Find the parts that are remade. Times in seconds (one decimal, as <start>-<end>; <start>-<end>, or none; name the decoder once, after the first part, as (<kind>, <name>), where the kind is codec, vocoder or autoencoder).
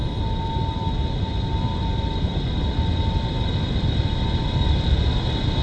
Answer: 1.3-4.7 (vocoder, BigVGAN v2)